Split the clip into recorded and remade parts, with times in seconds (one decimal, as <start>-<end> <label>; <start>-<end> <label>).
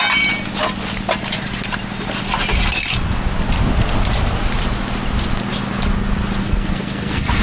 0.0-6.4 recorded; 6.4-7.4 remade